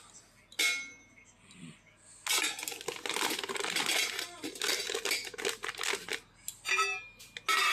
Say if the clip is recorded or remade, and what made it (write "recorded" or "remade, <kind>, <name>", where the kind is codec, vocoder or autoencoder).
recorded